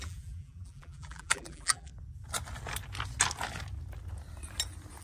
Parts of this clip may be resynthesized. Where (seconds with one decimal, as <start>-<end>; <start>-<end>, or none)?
0.0-1.9